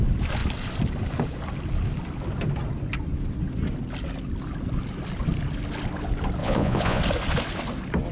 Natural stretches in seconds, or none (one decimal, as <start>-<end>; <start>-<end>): 0.0-6.4; 7.0-8.1